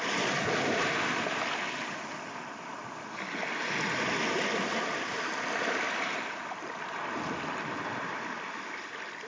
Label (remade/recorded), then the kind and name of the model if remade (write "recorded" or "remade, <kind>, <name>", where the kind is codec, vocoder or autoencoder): recorded